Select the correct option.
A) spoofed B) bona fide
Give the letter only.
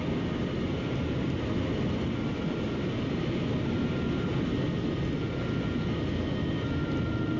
B